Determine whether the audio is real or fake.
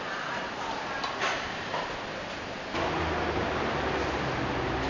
real